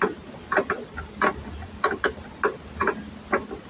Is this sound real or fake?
real